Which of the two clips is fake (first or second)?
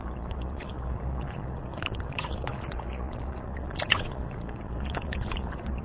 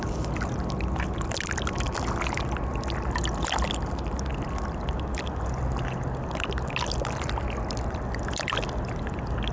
first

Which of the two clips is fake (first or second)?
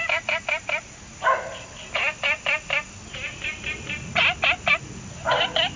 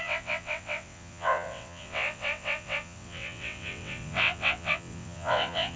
second